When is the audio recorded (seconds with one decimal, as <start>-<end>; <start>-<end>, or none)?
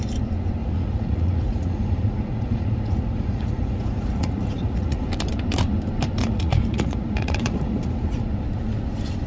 0.0-0.6; 5.1-6.2; 8.3-9.3